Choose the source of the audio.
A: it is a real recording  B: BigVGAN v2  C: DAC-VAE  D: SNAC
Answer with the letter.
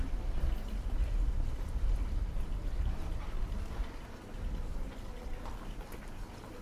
A